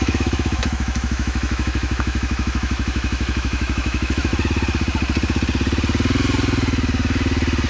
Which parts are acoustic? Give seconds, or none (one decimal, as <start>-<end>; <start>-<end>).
4.3-7.7